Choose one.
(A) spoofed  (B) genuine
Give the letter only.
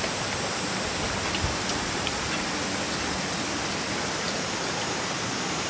B